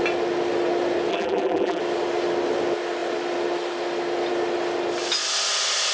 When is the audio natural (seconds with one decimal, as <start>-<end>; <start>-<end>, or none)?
0.0-1.1; 1.8-5.9